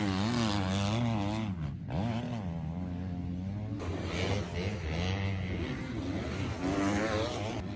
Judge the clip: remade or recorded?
recorded